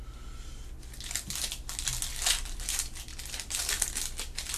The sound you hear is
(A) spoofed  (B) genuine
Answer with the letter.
B